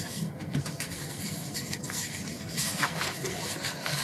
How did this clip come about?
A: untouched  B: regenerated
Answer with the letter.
B